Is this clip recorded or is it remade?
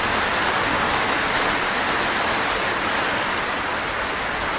recorded